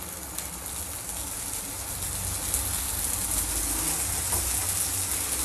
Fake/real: real